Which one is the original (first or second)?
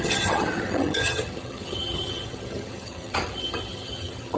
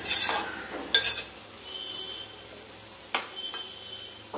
second